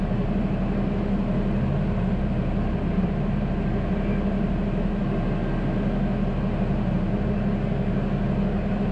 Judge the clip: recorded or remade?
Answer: recorded